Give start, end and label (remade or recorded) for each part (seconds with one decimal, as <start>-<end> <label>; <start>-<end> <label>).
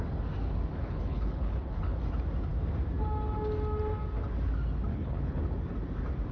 0.0-0.7 recorded; 0.7-2.0 remade; 2.0-4.9 recorded; 4.9-5.4 remade; 5.4-6.3 recorded